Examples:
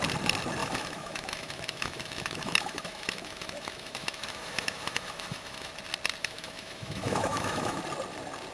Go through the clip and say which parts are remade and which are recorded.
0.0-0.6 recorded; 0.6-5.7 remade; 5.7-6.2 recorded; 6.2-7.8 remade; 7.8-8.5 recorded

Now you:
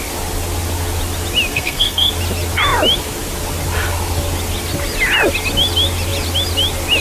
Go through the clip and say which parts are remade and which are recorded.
0.0-1.5 recorded; 1.5-2.1 remade; 2.1-7.0 recorded

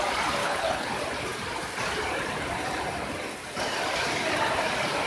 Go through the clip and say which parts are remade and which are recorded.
0.0-0.4 recorded; 0.4-0.9 remade; 0.9-5.1 recorded

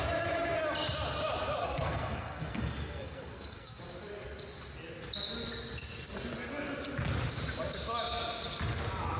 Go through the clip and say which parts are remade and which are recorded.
0.0-1.6 recorded; 1.6-3.8 remade; 3.8-9.2 recorded